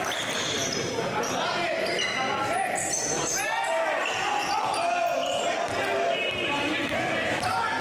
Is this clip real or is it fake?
real